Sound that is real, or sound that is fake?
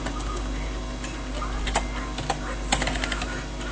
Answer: real